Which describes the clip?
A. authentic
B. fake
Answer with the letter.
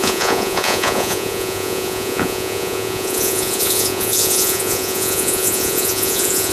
B